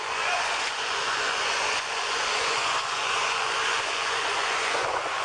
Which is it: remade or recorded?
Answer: remade